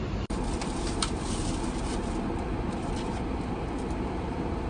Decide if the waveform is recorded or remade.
remade